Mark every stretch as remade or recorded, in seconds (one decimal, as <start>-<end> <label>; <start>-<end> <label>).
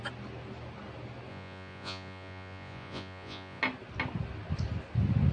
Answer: 0.0-1.3 recorded; 1.3-3.6 remade; 3.6-5.3 recorded